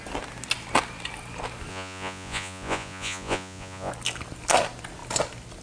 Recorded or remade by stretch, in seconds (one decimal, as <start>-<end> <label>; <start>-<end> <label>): 0.0-1.7 recorded; 1.7-3.9 remade; 3.9-5.6 recorded